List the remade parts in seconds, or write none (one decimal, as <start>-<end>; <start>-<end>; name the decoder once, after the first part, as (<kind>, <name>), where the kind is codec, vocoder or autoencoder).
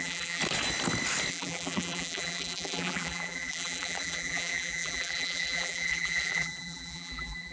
0.0-0.4 (vocoder, BigVGAN v2); 1.3-7.5